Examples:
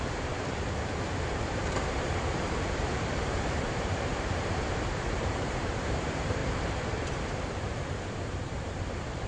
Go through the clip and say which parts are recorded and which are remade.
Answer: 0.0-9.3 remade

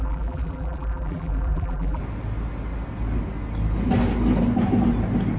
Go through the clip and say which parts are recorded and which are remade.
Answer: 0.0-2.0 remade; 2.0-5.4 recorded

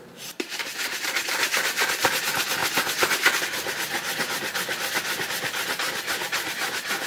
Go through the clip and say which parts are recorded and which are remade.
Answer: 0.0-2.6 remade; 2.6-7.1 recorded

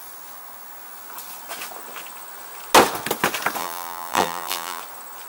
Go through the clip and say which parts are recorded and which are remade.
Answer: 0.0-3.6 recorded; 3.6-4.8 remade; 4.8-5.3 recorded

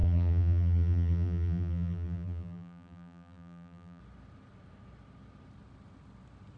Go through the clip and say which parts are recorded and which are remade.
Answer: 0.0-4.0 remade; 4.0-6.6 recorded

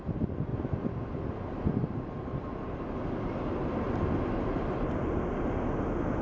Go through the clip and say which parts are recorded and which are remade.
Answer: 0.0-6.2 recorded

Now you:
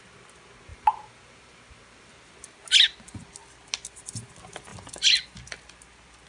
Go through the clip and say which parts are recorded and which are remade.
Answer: 0.0-0.7 recorded; 0.7-2.3 remade; 2.3-6.3 recorded